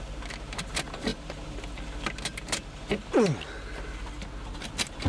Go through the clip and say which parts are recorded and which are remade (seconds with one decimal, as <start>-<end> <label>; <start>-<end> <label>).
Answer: 0.0-5.1 recorded